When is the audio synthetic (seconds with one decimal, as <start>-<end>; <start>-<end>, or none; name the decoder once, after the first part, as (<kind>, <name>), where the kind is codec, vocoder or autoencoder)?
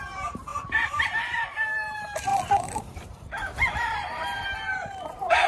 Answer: 0.0-2.3 (vocoder, BigVGAN v2); 2.8-5.5